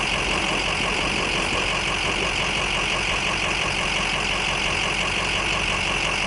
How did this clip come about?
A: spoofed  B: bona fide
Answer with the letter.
B